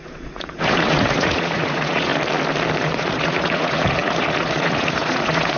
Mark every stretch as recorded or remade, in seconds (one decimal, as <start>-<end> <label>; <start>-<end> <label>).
0.0-2.1 remade; 2.1-2.8 recorded; 2.8-5.6 remade